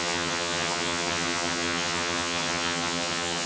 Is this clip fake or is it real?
fake